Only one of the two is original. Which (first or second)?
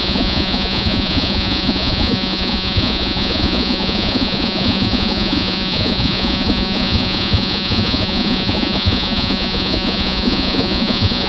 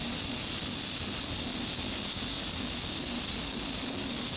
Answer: second